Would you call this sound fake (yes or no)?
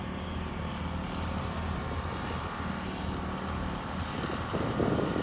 no